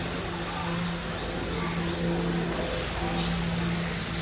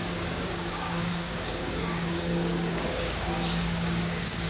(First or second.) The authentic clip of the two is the first